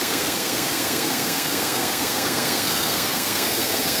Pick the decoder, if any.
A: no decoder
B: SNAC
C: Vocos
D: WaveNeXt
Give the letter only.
B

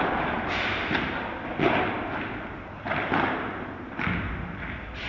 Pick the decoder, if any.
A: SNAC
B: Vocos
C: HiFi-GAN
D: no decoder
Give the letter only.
D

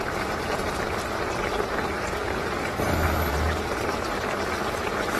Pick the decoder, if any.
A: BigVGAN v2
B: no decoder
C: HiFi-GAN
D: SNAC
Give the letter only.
A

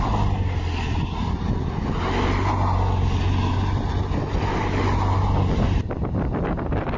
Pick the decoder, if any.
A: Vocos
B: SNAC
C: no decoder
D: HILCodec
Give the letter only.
C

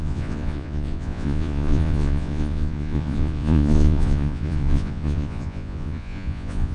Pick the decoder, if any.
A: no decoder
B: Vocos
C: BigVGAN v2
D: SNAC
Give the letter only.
B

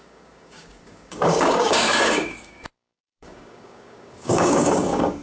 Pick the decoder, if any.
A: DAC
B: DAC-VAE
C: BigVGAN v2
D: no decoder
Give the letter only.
A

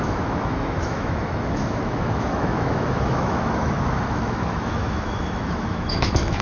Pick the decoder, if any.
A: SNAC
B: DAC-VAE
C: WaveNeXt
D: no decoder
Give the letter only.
B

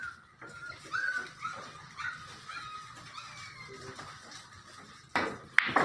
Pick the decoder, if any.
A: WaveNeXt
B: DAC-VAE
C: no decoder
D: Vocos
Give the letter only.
C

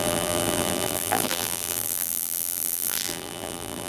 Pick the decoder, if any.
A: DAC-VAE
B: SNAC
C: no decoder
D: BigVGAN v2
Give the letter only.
D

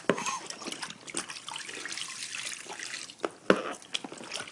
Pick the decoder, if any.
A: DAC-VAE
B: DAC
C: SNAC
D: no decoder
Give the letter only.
D